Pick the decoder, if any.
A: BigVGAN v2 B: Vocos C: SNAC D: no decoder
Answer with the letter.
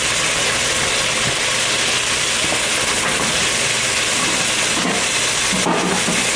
D